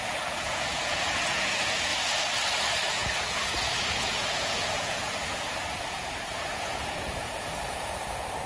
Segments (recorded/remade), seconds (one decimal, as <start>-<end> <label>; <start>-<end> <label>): 0.0-1.9 remade; 1.9-2.9 recorded; 2.9-5.2 remade; 5.2-5.9 recorded; 5.9-8.5 remade